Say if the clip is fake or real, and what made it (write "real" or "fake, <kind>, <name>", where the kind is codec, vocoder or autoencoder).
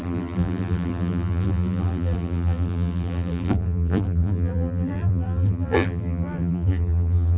fake, vocoder, BigVGAN v2